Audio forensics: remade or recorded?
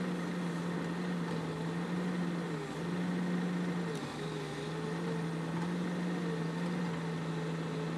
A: recorded